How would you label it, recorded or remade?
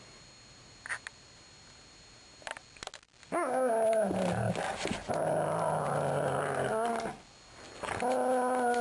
recorded